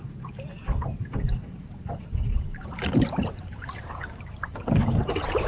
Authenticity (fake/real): fake